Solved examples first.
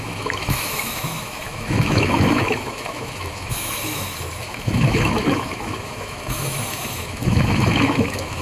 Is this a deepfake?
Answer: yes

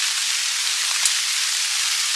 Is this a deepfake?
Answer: no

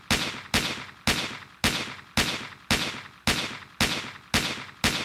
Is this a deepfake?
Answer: no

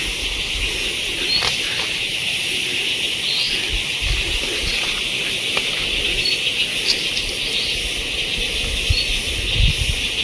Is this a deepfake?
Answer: no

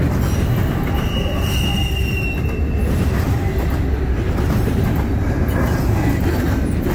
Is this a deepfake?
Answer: no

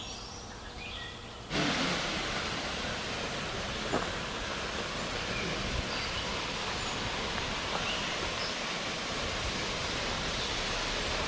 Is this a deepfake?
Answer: no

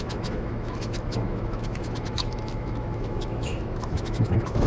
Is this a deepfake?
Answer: yes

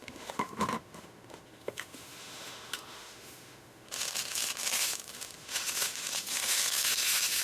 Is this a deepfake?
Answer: yes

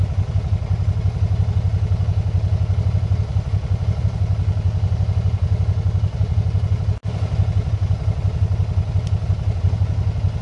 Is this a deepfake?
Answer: no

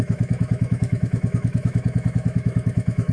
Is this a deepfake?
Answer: yes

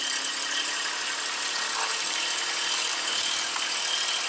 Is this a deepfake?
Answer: no